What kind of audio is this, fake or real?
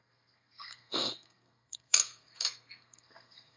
fake